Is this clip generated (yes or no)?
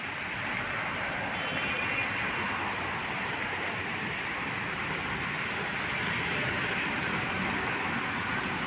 no